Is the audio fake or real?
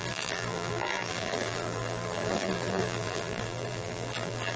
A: fake